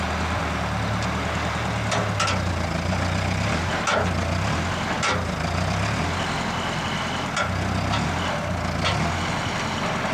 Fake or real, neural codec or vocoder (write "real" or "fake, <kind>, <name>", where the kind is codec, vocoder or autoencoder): real